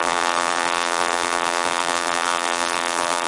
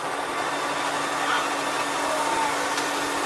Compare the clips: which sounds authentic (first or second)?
second